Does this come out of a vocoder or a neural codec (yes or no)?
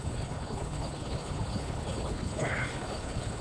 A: yes